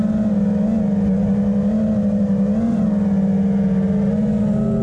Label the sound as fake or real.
real